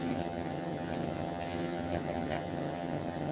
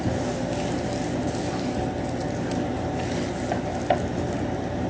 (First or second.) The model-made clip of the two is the first